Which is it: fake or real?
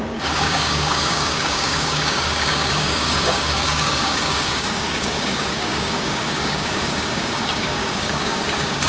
fake